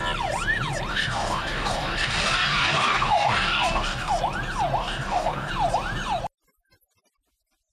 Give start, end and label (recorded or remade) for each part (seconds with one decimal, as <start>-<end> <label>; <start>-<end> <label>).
0.0-0.9 recorded; 0.9-4.1 remade; 4.1-4.8 recorded; 4.8-5.5 remade; 5.5-7.7 recorded